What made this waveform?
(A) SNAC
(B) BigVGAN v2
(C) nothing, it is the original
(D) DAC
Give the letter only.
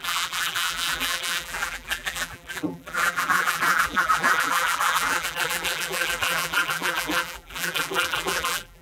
B